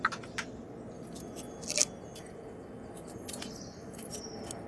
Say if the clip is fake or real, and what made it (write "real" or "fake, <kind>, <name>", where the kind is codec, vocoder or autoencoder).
real